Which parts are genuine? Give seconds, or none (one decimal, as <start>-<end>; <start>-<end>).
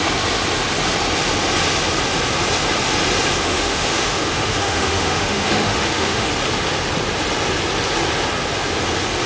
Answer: 0.0-3.4; 6.3-9.3